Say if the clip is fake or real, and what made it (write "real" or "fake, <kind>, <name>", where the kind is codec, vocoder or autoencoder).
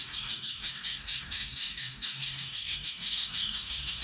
fake, codec, DAC